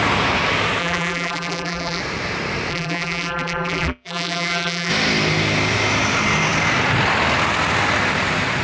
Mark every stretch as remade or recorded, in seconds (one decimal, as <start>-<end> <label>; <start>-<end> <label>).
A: 0.0-0.8 recorded; 0.8-2.0 remade; 2.0-2.7 recorded; 2.7-4.9 remade; 4.9-8.6 recorded